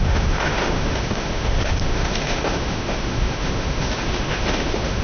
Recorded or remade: remade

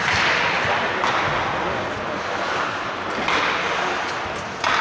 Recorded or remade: recorded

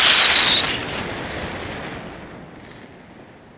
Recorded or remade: recorded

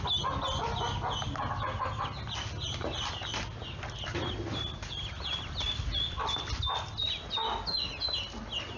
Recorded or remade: recorded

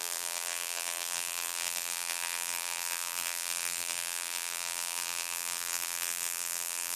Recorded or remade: remade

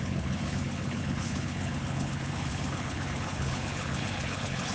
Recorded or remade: remade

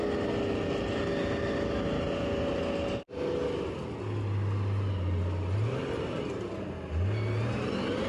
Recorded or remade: recorded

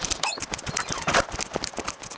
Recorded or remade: recorded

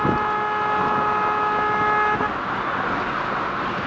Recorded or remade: recorded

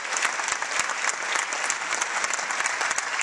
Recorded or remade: recorded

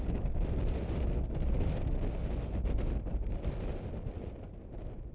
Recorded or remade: recorded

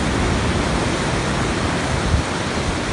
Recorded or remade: recorded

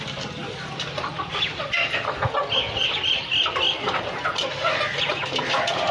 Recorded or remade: recorded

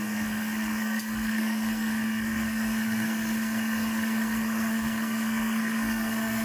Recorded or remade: remade